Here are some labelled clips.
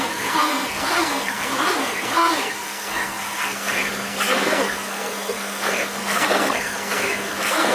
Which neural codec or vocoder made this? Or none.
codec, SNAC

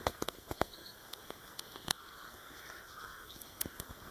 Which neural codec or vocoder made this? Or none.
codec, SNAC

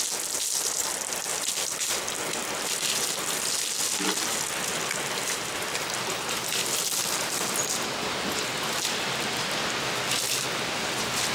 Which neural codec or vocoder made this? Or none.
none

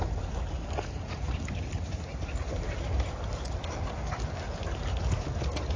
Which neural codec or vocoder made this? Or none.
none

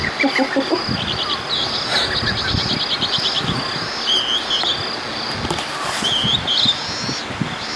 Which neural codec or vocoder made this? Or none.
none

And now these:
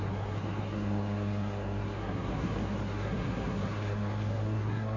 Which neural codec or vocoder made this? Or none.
codec, SNAC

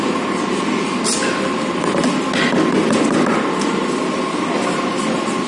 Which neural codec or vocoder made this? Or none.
none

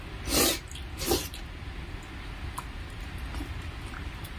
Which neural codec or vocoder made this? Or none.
none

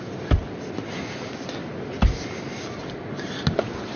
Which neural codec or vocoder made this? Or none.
none